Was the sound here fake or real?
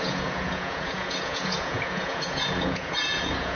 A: fake